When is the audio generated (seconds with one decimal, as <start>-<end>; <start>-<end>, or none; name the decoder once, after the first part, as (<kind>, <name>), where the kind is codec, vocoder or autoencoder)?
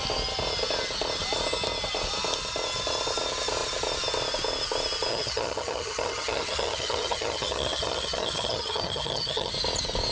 5.1-9.5 (vocoder, HiFi-GAN)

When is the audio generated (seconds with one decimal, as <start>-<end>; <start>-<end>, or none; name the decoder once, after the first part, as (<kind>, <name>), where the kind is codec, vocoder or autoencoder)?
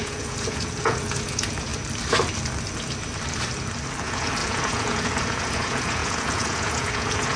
0.0-1.7 (vocoder, Vocos); 4.0-7.4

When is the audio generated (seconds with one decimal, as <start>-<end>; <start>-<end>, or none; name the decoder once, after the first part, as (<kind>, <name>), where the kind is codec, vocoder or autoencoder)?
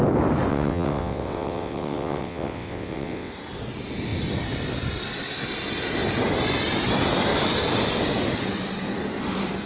0.5-3.3 (vocoder, WaveNeXt)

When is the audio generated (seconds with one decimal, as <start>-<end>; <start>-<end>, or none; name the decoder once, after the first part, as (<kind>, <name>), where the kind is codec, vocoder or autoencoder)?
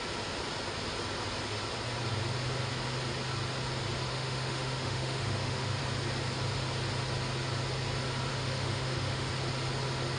4.1-5.8 (autoencoder, DAC-VAE); 8.3-9.3